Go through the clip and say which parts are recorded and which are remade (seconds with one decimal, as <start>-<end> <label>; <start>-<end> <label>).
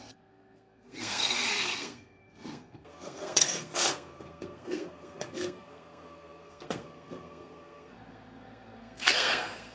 0.0-9.7 remade